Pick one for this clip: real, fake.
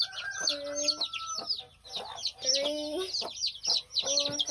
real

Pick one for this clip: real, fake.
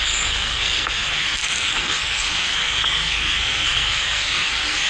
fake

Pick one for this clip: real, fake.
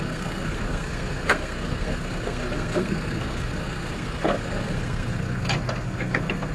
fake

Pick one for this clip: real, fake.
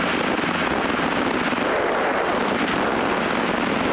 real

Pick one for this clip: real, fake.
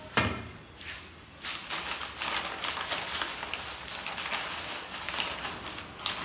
real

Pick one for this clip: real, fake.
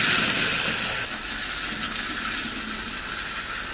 real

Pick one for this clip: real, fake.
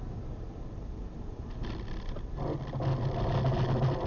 real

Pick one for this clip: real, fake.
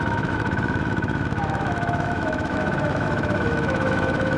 fake